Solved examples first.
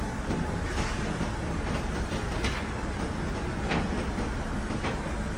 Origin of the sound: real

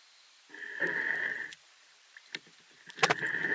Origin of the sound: real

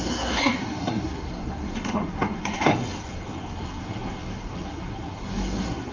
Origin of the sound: fake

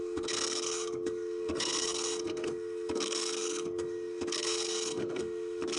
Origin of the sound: fake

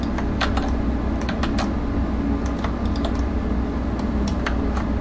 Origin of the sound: real